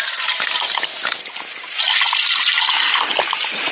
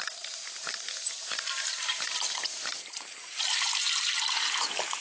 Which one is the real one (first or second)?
first